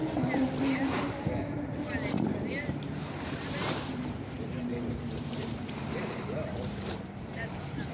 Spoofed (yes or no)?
yes